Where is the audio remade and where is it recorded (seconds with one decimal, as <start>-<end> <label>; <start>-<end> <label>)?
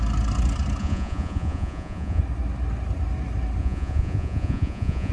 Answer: 0.0-0.8 recorded; 0.8-2.2 remade; 2.2-3.6 recorded; 3.6-5.1 remade